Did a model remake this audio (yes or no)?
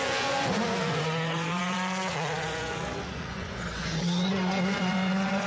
yes